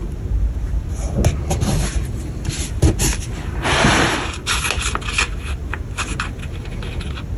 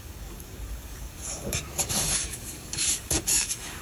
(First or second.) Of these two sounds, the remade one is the second